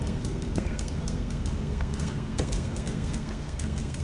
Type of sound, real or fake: fake